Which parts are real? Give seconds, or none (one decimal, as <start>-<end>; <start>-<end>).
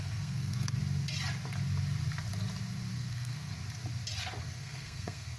0.8-2.9; 3.5-4.4